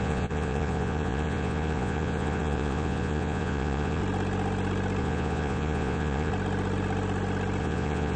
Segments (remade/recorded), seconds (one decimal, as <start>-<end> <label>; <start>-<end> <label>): 0.0-4.0 remade; 4.0-5.0 recorded; 5.0-6.3 remade; 6.3-7.6 recorded; 7.6-8.2 remade